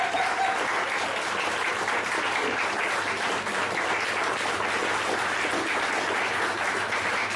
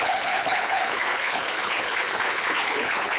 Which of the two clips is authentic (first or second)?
first